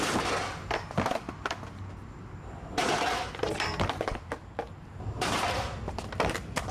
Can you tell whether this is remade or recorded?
recorded